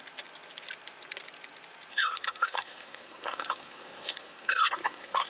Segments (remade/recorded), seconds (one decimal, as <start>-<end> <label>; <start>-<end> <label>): 0.0-1.9 recorded; 1.9-5.3 remade